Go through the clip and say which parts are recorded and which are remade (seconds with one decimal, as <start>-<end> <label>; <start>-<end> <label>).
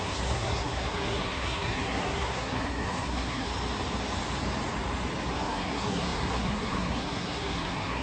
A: 0.0-3.5 remade; 3.5-5.3 recorded; 5.3-8.0 remade